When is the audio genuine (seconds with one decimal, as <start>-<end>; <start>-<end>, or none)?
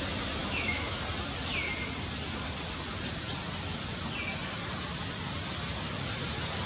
0.0-0.4; 1.0-6.7